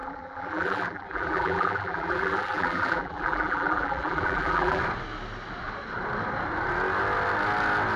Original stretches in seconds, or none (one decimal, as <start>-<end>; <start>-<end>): 4.8-8.0